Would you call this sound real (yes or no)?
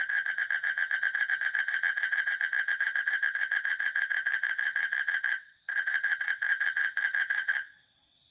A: no